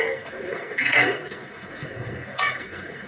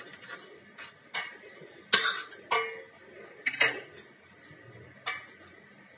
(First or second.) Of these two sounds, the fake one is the first